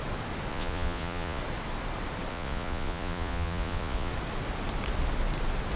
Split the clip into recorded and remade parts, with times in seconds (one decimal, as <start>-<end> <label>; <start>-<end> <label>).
0.0-0.5 recorded; 0.5-1.4 remade; 1.4-2.3 recorded; 2.3-4.1 remade; 4.1-5.8 recorded